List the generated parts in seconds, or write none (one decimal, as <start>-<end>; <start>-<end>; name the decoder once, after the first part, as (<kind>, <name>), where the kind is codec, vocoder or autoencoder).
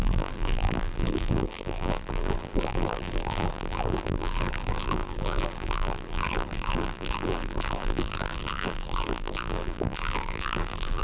0.0-11.0 (vocoder, BigVGAN v2)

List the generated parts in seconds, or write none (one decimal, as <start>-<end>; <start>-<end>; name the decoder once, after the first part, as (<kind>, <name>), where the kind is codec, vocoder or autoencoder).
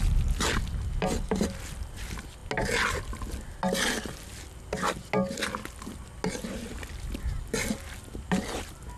none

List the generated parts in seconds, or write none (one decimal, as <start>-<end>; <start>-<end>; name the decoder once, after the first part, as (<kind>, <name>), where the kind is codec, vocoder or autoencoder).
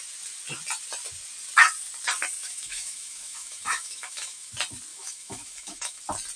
2.4-4.5 (autoencoder, DAC-VAE); 4.9-6.0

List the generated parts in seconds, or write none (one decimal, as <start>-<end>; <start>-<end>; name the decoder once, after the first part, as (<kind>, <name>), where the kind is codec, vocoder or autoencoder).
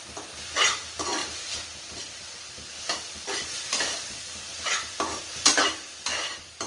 1.2-5.2 (vocoder, BigVGAN v2); 6.1-6.7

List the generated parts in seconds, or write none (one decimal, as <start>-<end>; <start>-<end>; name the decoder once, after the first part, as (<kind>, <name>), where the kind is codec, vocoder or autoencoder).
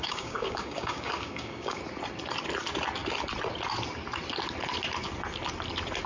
0.0-1.8 (codec, DAC)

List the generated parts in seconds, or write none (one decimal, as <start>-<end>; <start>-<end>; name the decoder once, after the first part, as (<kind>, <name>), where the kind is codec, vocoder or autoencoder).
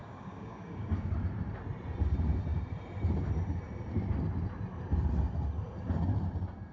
0.0-1.1 (codec, DAC)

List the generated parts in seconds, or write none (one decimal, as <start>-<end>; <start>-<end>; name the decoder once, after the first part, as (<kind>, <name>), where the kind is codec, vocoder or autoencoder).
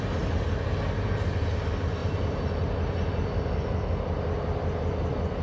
none